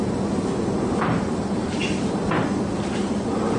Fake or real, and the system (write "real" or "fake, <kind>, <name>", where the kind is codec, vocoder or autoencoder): real